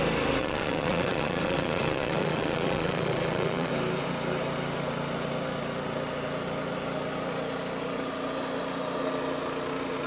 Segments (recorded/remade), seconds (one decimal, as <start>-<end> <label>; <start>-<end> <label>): 0.0-0.4 recorded; 0.4-3.7 remade; 3.7-10.1 recorded